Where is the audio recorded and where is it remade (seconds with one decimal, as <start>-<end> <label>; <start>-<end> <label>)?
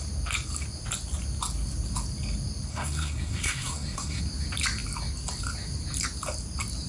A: 0.0-2.7 recorded; 2.7-4.2 remade; 4.2-6.9 recorded